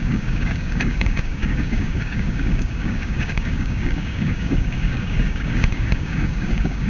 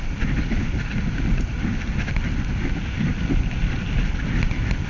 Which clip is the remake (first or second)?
first